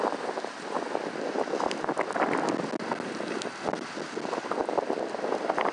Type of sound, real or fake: real